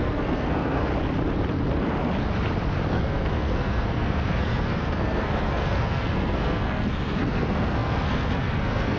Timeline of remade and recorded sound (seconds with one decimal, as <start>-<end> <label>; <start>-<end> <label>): 0.0-0.9 remade; 0.9-2.9 recorded; 2.9-9.0 remade

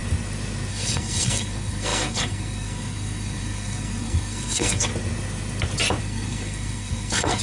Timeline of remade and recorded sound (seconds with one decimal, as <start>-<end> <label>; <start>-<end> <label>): 0.0-0.7 recorded; 0.7-4.9 remade; 4.9-6.0 recorded; 6.0-7.4 remade

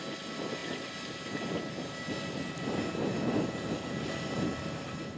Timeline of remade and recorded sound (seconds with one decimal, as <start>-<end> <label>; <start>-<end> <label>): 0.0-5.2 recorded